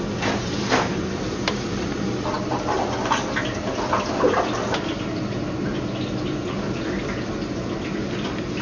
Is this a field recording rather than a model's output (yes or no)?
yes